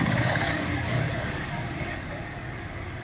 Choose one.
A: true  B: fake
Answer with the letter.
B